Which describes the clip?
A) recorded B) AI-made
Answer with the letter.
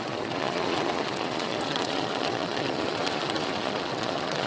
B